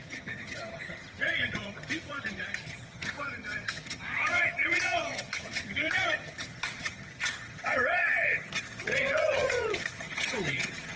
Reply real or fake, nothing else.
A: fake